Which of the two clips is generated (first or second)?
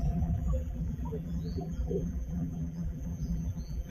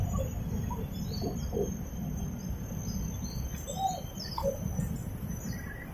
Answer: first